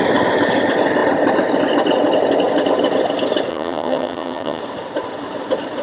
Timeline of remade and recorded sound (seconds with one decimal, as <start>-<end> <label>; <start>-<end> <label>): 0.0-3.5 recorded; 3.5-4.6 remade; 4.6-5.8 recorded